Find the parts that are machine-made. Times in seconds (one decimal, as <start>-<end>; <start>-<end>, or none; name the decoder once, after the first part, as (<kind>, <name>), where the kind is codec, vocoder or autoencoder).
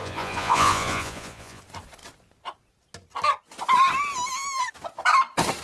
0.0-1.6 (vocoder, Vocos)